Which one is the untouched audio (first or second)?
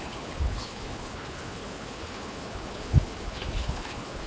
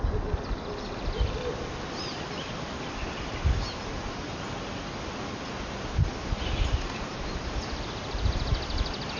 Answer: second